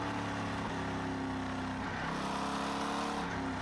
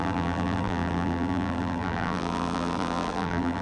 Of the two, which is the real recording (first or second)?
first